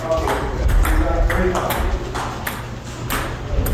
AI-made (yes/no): no